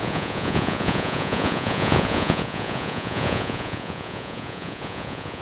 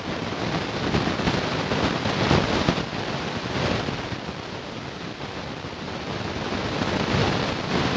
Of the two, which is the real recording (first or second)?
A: second